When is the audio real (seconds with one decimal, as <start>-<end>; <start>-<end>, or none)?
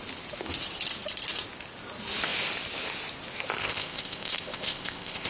0.0-3.6